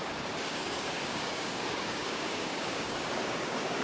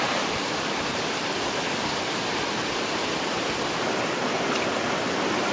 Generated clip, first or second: first